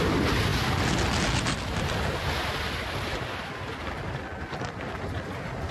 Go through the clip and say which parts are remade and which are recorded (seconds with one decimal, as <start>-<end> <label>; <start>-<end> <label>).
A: 0.0-5.7 recorded

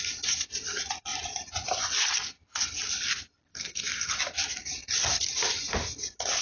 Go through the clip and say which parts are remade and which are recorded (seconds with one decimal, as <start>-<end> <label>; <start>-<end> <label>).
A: 0.0-3.5 recorded; 3.5-4.2 remade; 4.2-6.4 recorded

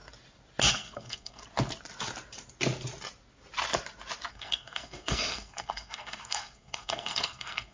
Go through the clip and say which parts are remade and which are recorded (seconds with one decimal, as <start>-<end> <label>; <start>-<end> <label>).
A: 0.0-0.7 recorded; 0.7-1.4 remade; 1.4-4.3 recorded; 4.3-7.7 remade